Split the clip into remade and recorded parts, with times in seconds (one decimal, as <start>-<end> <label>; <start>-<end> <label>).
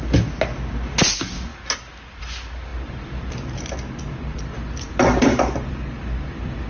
0.0-2.7 recorded; 2.7-6.7 remade